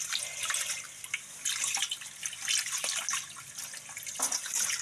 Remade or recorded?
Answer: recorded